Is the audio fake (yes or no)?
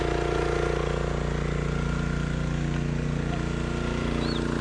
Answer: no